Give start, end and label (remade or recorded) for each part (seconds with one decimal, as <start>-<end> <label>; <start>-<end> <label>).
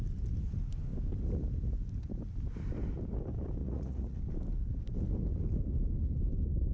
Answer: 0.0-3.6 recorded; 3.6-4.2 remade; 4.2-6.7 recorded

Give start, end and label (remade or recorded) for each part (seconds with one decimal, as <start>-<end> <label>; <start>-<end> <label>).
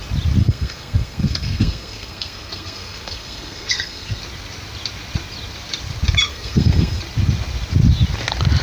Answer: 0.0-0.4 recorded; 0.4-4.2 remade; 4.2-6.3 recorded; 6.3-7.0 remade; 7.0-8.6 recorded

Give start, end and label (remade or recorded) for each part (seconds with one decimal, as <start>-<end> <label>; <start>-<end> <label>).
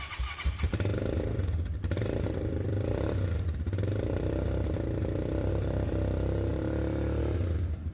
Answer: 0.0-6.5 remade; 6.5-7.2 recorded; 7.2-7.9 remade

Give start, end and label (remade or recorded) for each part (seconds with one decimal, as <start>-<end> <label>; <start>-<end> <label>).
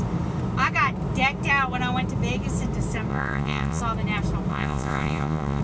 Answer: 0.0-3.1 recorded; 3.1-3.8 remade; 3.8-4.5 recorded; 4.5-5.6 remade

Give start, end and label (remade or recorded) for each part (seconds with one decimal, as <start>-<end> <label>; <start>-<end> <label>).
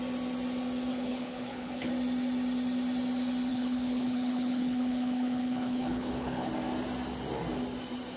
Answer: 0.0-0.9 recorded; 0.9-1.9 remade; 1.9-3.5 recorded; 3.5-6.5 remade; 6.5-8.2 recorded